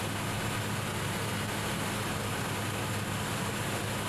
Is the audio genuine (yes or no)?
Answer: yes